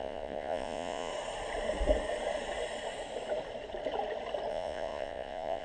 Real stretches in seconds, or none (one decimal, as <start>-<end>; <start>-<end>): 1.1-4.5